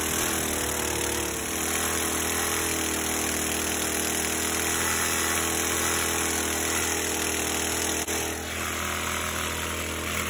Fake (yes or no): no